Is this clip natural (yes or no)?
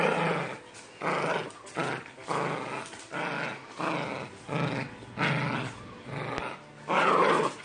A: yes